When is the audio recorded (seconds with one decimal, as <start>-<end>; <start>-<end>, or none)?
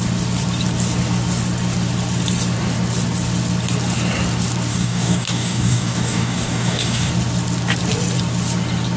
0.0-4.7; 7.1-9.0